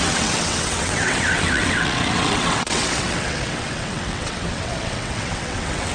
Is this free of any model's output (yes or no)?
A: no